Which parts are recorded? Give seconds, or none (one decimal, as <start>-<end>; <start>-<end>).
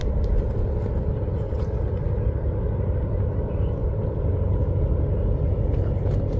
0.0-3.8; 4.8-6.4